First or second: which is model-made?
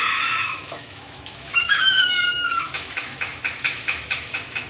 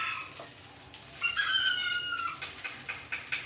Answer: first